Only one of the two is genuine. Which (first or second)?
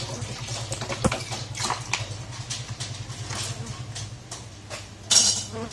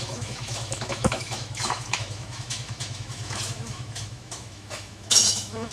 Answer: first